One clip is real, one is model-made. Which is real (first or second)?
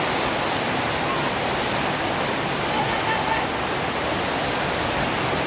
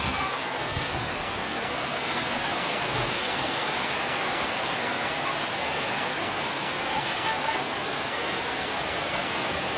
first